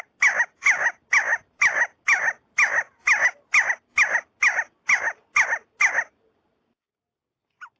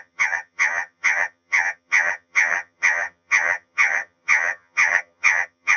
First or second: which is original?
first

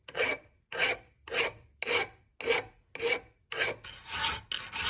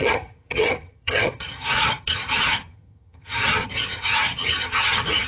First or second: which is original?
first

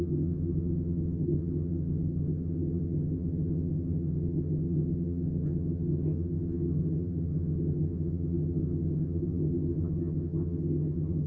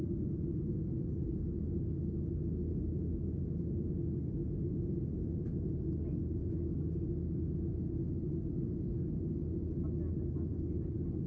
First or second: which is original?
second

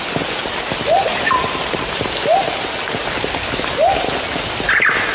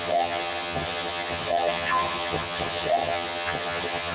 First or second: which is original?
first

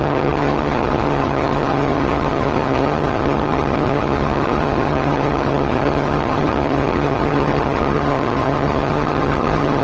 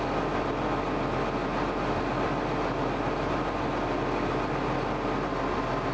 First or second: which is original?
second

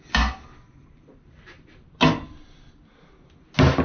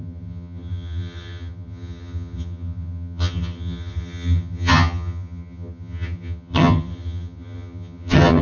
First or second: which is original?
first